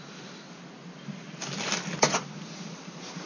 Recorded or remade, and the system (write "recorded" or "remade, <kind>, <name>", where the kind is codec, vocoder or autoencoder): recorded